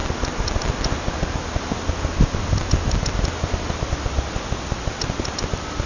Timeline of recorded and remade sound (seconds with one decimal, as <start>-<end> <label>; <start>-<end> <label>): 0.0-5.9 recorded